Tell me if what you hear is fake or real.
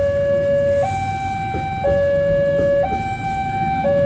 real